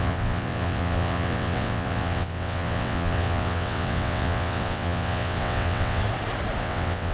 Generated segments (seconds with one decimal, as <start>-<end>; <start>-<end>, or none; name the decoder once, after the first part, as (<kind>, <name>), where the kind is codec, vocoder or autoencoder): 0.0-6.0 (vocoder, WaveNeXt); 6.6-7.1